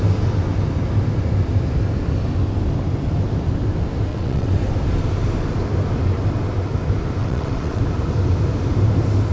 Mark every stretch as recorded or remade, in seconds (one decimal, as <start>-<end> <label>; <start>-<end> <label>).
0.0-4.1 recorded; 4.1-4.6 remade; 4.6-7.2 recorded; 7.2-7.8 remade; 7.8-9.3 recorded